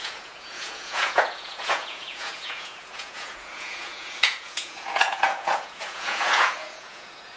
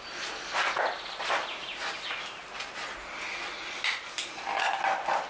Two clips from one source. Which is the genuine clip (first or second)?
second